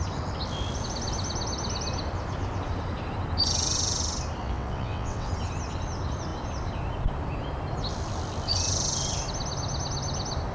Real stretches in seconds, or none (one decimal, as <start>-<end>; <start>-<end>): 0.0-4.4; 5.3-10.5